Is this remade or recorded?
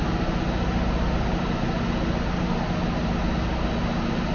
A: recorded